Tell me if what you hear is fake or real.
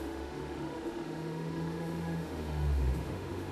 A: fake